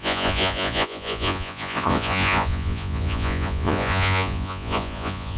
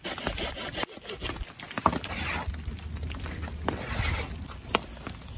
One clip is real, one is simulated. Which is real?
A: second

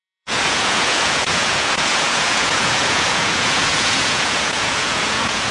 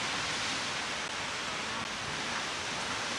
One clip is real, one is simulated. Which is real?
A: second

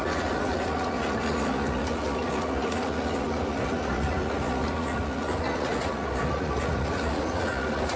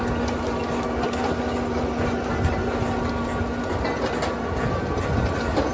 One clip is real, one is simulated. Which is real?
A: second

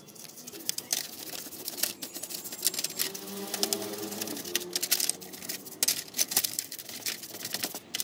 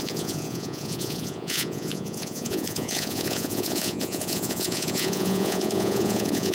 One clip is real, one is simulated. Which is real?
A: first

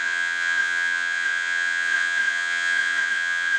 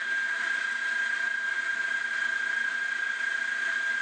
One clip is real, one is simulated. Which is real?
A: second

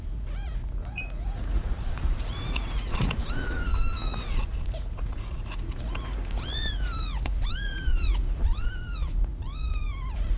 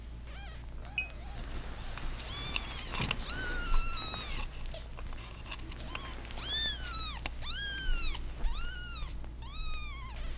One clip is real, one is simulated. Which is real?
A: second